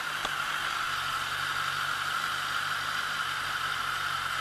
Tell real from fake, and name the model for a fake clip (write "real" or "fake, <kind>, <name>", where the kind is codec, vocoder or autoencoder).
fake, vocoder, BigVGAN v2